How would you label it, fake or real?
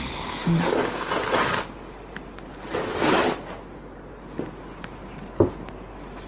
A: real